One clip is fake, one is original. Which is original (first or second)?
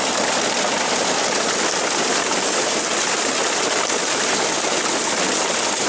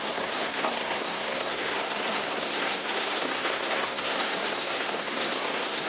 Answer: first